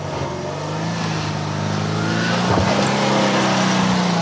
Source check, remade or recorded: recorded